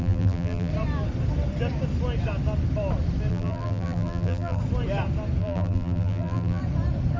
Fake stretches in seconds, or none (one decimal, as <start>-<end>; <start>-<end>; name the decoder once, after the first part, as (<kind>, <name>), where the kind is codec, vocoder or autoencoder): 0.0-0.7 (vocoder, BigVGAN v2); 3.3-4.6; 5.4-6.6